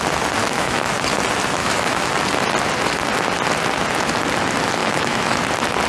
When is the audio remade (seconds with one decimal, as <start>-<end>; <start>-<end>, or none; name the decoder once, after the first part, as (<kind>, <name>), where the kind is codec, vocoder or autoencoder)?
0.4-0.9 (autoencoder, DAC-VAE); 1.6-2.1; 4.8-5.4